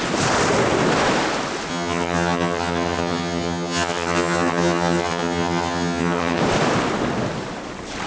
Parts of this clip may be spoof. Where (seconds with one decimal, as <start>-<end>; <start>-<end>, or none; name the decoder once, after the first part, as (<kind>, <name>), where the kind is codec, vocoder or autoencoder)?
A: 1.7-6.4 (vocoder, HiFi-GAN)